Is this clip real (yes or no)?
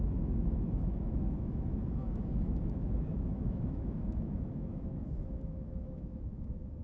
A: no